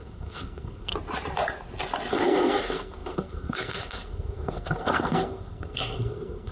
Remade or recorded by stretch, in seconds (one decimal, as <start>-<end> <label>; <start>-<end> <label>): 0.0-0.9 remade; 0.9-2.1 recorded; 2.1-6.5 remade